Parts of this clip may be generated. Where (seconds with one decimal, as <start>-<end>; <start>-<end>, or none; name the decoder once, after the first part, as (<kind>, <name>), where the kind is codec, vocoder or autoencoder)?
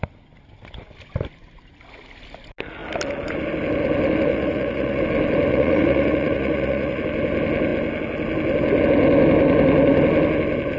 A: 4.3-5.0 (vocoder, Vocos); 5.5-7.0